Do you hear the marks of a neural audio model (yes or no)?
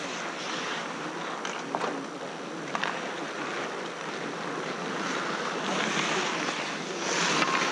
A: no